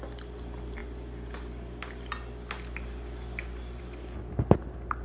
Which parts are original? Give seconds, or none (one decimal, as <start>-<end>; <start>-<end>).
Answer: 0.0-5.0